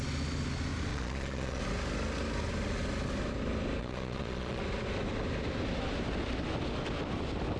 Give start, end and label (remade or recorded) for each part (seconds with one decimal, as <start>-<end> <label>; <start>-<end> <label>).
0.0-0.9 recorded; 0.9-1.6 remade; 1.6-3.8 recorded; 3.8-4.6 remade; 4.6-7.6 recorded